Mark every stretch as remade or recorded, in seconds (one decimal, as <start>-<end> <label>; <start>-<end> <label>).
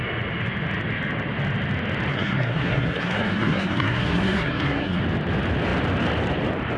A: 0.0-2.1 recorded; 2.1-5.0 remade; 5.0-6.8 recorded